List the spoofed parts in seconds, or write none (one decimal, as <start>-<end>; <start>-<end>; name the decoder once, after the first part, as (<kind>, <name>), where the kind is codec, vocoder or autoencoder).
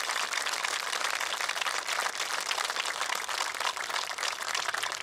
0.0-2.0 (vocoder, BigVGAN v2); 3.5-5.0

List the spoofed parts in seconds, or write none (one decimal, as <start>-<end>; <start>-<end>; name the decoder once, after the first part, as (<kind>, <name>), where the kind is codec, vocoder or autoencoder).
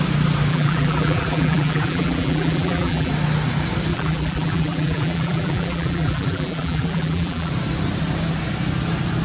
0.5-3.1 (vocoder, BigVGAN v2); 3.9-7.5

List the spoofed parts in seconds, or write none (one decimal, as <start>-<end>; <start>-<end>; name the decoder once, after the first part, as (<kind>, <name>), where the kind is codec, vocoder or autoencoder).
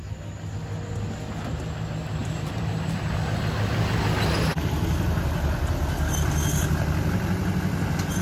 2.2-3.1 (vocoder, BigVGAN v2)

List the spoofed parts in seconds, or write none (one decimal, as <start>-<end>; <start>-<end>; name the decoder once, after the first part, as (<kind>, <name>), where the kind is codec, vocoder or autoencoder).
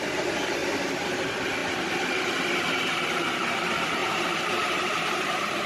0.0-0.6 (vocoder, BigVGAN v2); 1.1-1.6; 3.4-5.7